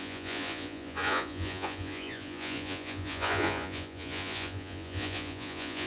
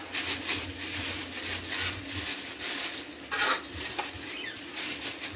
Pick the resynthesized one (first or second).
first